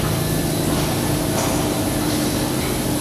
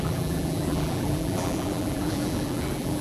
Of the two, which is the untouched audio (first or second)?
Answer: first